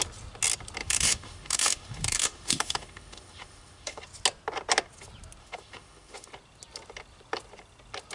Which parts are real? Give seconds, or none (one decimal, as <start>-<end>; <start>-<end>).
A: 0.0-0.8; 4.0-5.4; 6.3-8.1